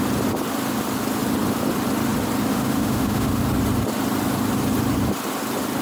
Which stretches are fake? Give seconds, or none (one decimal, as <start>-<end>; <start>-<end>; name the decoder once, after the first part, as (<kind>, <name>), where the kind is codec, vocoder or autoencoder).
2.5-3.4 (autoencoder, DAC-VAE)